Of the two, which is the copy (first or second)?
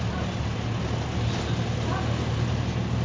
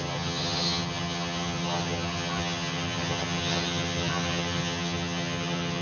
second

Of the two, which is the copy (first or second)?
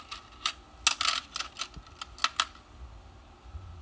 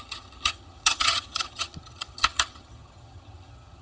second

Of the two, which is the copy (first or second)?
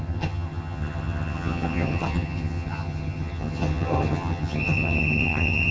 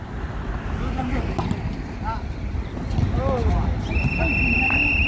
first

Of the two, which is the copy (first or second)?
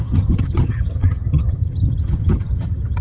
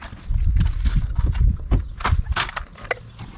first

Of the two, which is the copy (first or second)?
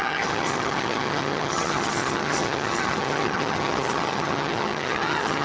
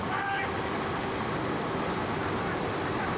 first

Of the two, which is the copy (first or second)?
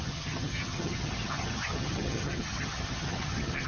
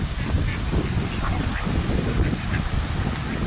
first